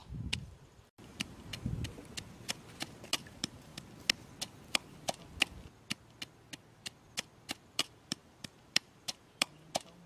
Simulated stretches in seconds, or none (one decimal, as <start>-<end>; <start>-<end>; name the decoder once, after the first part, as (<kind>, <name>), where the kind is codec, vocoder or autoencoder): 0.0-1.5 (vocoder, BigVGAN v2); 3.3-3.7; 7.6-10.1